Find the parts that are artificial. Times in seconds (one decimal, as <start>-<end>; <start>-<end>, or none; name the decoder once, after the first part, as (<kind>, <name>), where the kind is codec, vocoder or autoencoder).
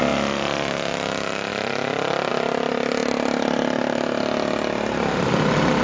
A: 3.0-4.2 (vocoder, BigVGAN v2)